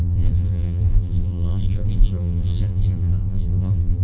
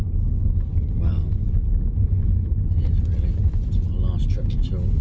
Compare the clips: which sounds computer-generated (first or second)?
first